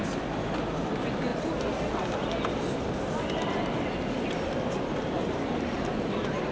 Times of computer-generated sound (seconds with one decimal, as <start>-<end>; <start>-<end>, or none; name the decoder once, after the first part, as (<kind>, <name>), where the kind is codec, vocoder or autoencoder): none